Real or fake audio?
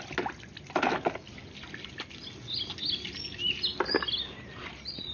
real